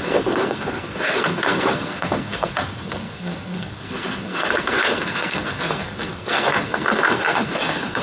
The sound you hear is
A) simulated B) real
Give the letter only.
A